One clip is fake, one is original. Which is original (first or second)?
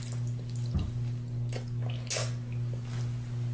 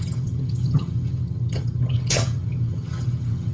first